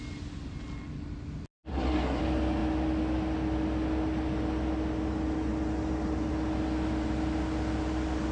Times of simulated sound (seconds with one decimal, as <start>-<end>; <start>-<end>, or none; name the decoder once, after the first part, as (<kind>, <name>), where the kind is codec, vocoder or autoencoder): 1.7-2.2 (codec, SNAC)